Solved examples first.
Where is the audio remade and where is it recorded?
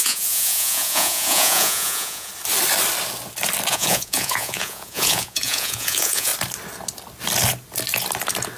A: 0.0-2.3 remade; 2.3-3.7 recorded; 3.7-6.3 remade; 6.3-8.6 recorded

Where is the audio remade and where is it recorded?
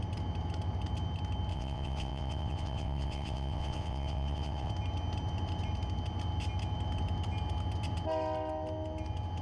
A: 0.0-1.5 recorded; 1.5-4.7 remade; 4.7-9.4 recorded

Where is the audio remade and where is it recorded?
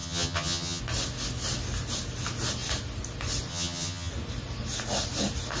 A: 0.0-0.8 remade; 0.8-3.5 recorded; 3.5-4.1 remade; 4.1-5.6 recorded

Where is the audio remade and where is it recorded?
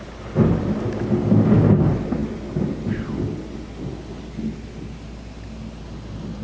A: 0.0-6.4 recorded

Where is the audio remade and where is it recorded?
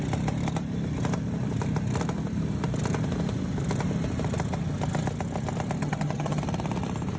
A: 0.0-5.8 recorded; 5.8-6.4 remade; 6.4-7.2 recorded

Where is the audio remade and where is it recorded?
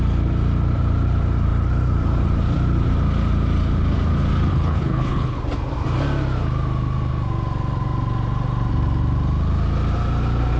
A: 0.0-4.5 recorded; 4.5-5.4 remade; 5.4-10.6 recorded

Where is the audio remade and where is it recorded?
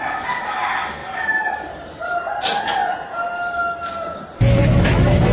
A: 0.0-5.3 recorded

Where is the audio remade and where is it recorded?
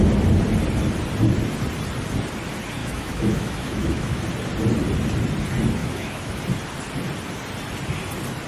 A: 0.0-2.8 recorded; 2.8-4.2 remade; 4.2-5.8 recorded; 5.8-6.4 remade; 6.4-8.5 recorded